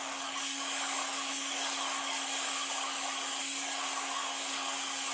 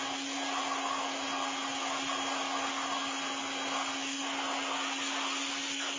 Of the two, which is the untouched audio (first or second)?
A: second